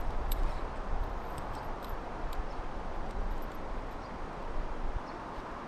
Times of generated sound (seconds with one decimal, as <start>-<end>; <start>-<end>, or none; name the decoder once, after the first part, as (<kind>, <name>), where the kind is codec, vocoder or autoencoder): 0.0-5.7 (vocoder, BigVGAN v2)

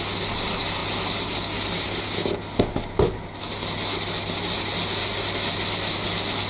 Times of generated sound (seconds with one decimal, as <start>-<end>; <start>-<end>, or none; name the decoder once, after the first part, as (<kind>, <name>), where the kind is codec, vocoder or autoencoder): none

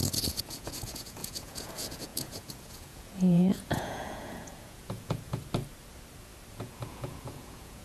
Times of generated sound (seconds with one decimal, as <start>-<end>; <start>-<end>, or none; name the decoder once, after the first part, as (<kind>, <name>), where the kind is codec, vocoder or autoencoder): 0.0-5.4 (vocoder, Vocos); 6.5-7.8

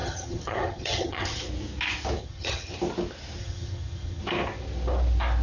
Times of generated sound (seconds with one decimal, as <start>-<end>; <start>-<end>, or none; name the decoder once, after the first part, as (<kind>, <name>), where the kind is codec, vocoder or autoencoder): 0.0-1.4 (vocoder, HiFi-GAN); 2.2-2.7; 3.4-4.2

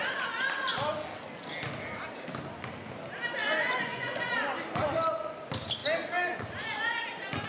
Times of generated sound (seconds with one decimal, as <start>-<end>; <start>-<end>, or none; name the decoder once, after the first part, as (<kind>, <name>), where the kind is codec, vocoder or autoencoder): 3.4-4.3 (vocoder, Vocos)